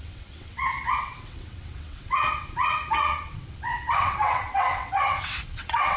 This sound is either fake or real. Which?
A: fake